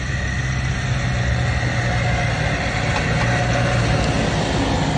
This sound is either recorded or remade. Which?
recorded